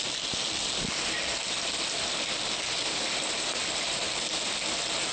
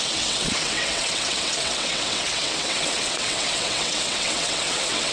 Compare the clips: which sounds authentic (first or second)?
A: first